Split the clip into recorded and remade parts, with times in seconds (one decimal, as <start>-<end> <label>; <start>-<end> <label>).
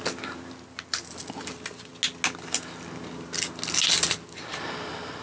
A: 0.0-5.2 recorded